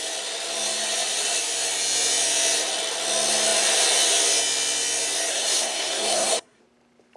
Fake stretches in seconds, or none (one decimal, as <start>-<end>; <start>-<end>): 5.3-6.6